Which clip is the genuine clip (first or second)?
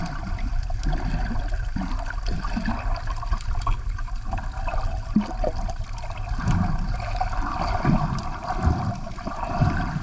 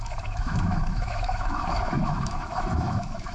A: first